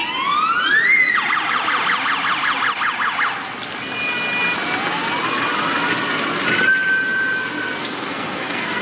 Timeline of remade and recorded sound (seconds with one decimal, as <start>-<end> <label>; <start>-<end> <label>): 0.0-7.8 recorded; 7.8-8.8 remade